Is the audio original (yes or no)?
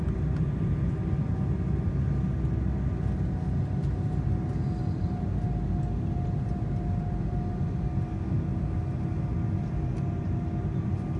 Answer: yes